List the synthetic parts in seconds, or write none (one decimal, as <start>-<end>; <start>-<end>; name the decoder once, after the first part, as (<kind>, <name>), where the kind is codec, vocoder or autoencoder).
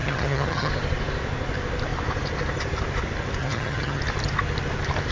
0.0-0.7 (vocoder, HiFi-GAN); 3.4-4.0